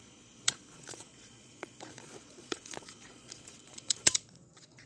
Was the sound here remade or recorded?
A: remade